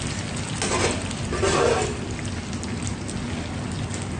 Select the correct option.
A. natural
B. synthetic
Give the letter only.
A